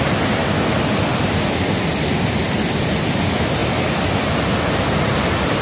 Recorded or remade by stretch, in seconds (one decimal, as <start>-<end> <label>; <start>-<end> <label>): 0.0-5.6 recorded